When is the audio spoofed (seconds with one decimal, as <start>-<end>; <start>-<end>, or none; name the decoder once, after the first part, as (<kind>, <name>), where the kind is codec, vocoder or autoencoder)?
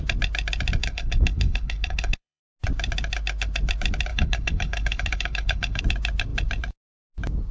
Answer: 0.8-2.4 (codec, HILCodec); 4.1-5.8